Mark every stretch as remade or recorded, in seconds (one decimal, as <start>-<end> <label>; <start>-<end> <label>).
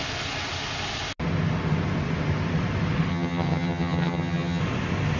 0.0-3.1 recorded; 3.1-4.6 remade; 4.6-5.2 recorded